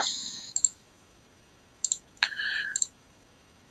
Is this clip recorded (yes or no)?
no